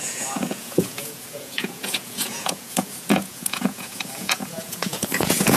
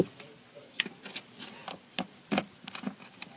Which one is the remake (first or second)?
first